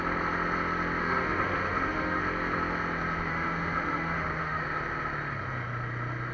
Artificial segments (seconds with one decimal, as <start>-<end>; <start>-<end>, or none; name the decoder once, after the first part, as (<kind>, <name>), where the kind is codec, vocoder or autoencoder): 1.0-2.2 (autoencoder, DAC-VAE); 3.3-4.6